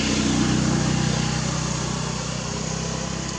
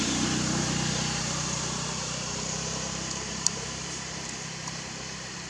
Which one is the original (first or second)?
first